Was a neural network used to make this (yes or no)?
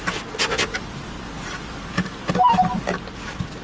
no